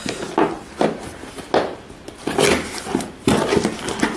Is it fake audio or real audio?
real